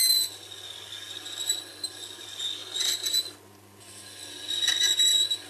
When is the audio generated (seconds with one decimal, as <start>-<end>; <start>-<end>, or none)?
none